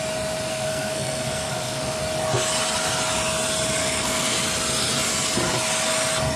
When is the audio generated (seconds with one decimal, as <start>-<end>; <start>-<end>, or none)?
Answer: 0.5-2.0; 3.8-4.4